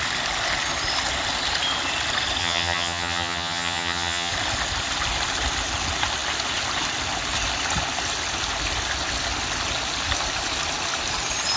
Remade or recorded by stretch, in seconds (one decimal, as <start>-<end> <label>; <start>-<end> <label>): 0.0-2.4 recorded; 2.4-4.3 remade; 4.3-11.6 recorded